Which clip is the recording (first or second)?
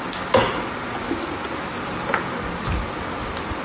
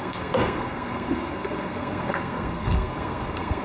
first